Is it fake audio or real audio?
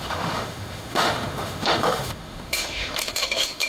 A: fake